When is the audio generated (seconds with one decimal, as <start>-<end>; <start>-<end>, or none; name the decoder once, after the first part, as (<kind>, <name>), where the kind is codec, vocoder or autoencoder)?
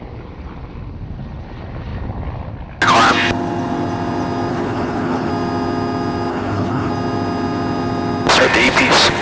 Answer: 4.5-5.3 (codec, HILCodec); 6.3-6.9